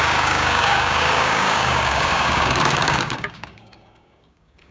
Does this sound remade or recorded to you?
remade